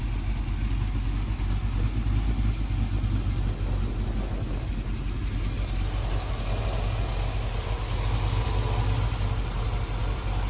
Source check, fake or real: real